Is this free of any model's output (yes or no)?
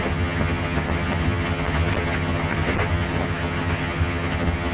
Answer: no